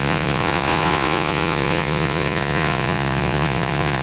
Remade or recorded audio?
remade